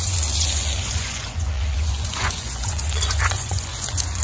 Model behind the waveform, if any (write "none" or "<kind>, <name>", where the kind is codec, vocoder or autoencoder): vocoder, Vocos